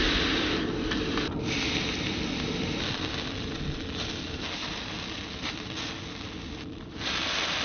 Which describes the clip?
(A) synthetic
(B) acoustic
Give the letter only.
B